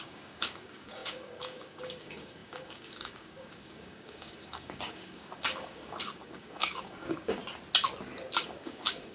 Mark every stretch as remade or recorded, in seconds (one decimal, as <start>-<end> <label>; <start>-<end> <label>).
0.0-7.4 remade; 7.4-8.4 recorded; 8.4-9.1 remade